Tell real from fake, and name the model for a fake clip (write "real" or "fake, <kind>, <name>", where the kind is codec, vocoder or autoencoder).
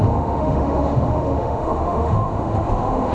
fake, autoencoder, DAC-VAE